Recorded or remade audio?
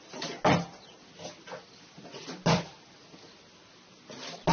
recorded